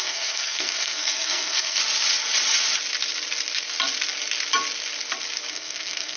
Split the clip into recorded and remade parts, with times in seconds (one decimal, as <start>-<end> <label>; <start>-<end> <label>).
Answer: 0.0-1.8 remade; 1.8-5.5 recorded; 5.5-6.2 remade